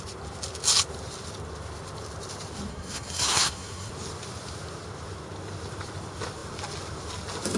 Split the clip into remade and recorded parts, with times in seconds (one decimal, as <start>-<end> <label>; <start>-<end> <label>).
0.0-2.7 recorded; 2.7-3.9 remade; 3.9-7.6 recorded